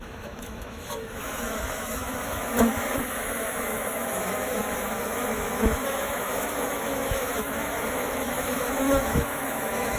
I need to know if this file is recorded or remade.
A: remade